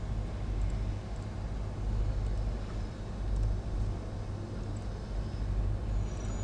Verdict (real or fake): real